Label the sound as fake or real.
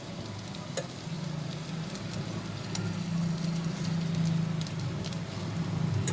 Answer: real